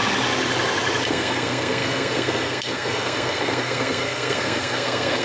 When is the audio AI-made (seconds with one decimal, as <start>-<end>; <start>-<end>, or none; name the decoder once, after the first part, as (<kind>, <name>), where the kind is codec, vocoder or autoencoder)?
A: 1.1-5.2 (codec, SNAC)